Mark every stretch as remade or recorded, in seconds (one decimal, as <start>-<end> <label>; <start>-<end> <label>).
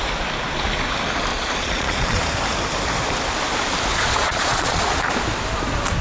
0.0-1.3 recorded; 1.3-2.2 remade; 2.2-3.9 recorded; 3.9-4.8 remade; 4.8-6.0 recorded